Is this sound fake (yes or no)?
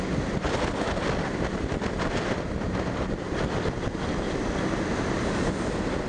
no